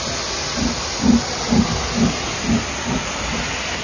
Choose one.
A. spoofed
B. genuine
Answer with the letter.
B